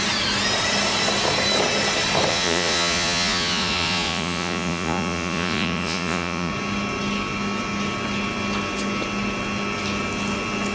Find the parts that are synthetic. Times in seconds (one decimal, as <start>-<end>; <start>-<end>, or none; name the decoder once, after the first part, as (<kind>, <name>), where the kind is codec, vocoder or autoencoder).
2.3-6.5 (vocoder, Vocos)